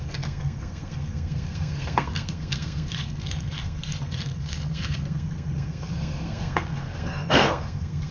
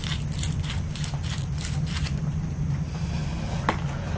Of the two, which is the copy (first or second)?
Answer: first